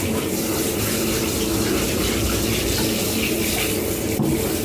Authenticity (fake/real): real